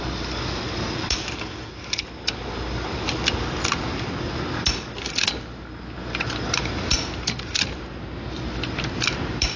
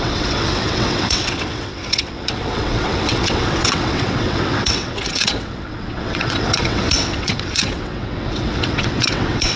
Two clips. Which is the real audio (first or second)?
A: first